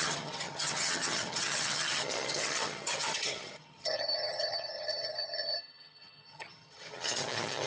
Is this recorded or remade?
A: remade